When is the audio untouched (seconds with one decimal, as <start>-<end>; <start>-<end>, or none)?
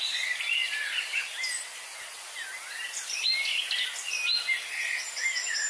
0.0-5.7